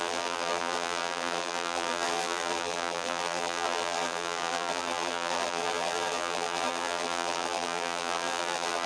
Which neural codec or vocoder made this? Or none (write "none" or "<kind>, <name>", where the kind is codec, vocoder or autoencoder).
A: vocoder, BigVGAN v2